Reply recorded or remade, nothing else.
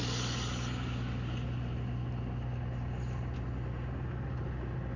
recorded